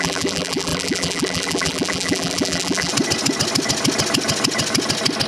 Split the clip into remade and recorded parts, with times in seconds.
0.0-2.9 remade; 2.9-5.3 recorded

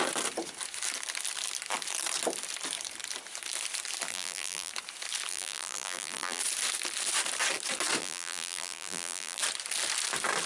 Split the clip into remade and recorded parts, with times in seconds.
0.0-4.1 recorded; 4.1-4.7 remade; 4.7-5.3 recorded; 5.3-6.4 remade; 6.4-8.0 recorded; 8.0-9.4 remade; 9.4-10.5 recorded